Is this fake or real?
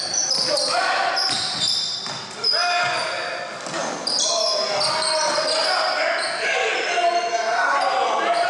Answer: real